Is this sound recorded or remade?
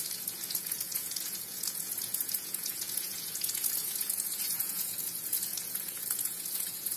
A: remade